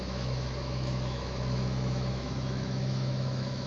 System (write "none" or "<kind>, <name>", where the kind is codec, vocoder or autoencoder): autoencoder, DAC-VAE